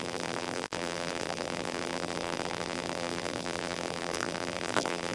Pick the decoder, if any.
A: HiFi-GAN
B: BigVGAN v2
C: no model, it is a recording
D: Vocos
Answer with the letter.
B